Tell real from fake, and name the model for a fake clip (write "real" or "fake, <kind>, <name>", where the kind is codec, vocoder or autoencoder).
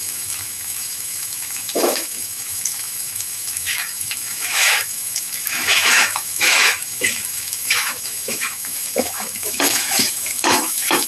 fake, autoencoder, DAC-VAE